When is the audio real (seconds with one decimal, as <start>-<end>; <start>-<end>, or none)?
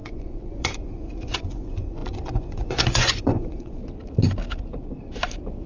3.8-5.7